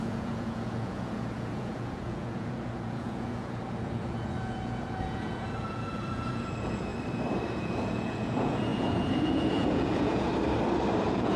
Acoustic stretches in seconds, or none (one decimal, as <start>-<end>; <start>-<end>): 6.9-7.6; 10.3-11.0